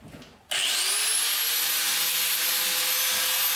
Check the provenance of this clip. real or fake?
real